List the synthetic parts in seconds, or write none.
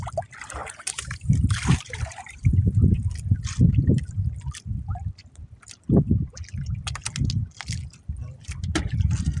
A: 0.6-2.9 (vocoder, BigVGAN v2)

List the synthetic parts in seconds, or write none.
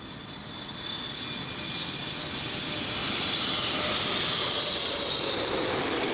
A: 3.0-6.1 (vocoder, BigVGAN v2)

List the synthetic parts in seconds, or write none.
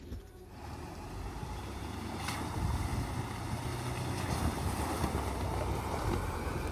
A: 0.0-2.9 (vocoder, BigVGAN v2); 5.8-6.7